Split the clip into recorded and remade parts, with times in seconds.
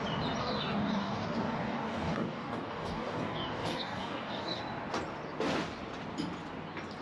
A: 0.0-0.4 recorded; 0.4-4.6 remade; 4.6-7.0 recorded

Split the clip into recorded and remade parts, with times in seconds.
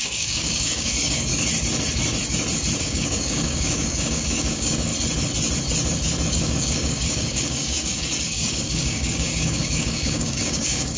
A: 0.0-1.3 remade; 1.3-2.8 recorded; 2.8-4.9 remade; 4.9-6.3 recorded; 6.3-11.0 remade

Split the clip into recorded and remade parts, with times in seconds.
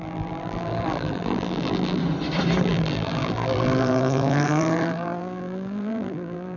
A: 0.0-2.0 remade; 2.0-2.6 recorded; 2.6-6.6 remade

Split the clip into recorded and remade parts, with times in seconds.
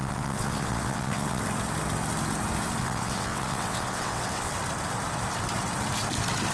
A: 0.0-1.4 remade; 1.4-2.8 recorded; 2.8-4.5 remade; 4.5-6.5 recorded